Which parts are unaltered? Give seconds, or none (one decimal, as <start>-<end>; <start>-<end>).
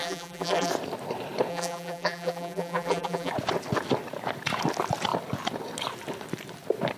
0.7-1.5; 3.3-7.0